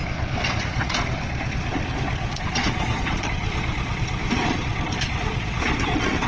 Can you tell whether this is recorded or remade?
remade